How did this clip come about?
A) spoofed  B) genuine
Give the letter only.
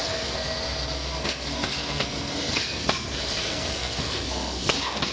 A